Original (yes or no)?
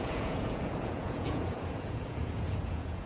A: no